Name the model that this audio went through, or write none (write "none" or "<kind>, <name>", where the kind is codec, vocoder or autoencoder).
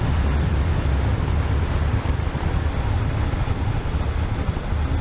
none